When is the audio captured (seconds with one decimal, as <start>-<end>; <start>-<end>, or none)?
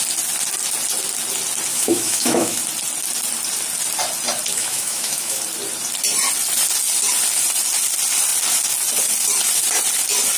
0.0-1.7; 2.6-4.5; 5.4-10.4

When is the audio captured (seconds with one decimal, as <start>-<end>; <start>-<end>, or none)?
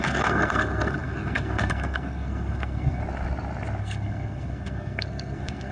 3.0-3.8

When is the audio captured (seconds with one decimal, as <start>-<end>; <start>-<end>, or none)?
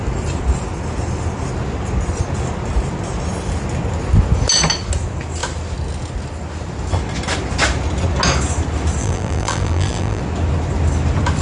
0.0-9.0; 10.2-11.4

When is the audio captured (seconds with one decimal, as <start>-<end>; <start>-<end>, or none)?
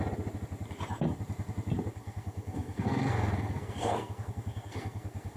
0.0-1.9